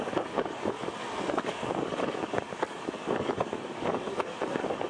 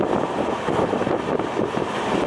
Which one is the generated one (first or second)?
first